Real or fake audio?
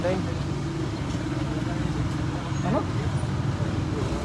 real